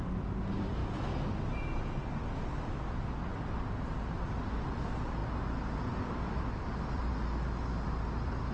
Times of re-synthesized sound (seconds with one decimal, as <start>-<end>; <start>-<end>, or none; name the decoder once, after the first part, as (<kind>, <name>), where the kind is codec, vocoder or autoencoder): none